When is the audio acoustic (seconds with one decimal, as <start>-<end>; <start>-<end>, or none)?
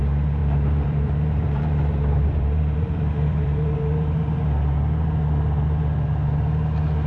0.0-0.4; 4.4-7.1